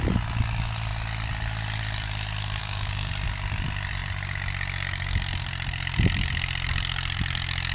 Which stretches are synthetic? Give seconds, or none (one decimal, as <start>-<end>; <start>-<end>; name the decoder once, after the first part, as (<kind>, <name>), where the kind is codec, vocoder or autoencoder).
2.6-3.1 (codec, DAC)